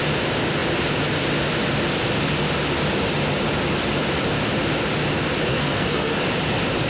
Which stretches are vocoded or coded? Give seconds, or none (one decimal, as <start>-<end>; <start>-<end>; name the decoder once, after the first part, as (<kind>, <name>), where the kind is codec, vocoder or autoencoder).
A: 5.5-6.1 (codec, SNAC)